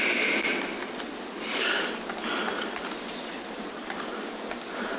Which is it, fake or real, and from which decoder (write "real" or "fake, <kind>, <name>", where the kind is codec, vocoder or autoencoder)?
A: real